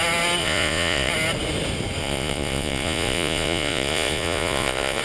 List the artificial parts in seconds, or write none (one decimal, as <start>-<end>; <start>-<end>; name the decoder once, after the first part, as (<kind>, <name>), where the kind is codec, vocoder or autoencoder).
0.4-1.1 (vocoder, Vocos); 2.0-5.0